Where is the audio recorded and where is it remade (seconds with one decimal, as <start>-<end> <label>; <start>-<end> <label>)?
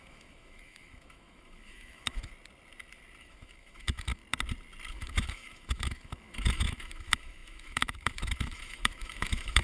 0.0-2.3 remade; 2.3-3.2 recorded; 3.2-4.2 remade; 4.2-4.9 recorded; 4.9-9.6 remade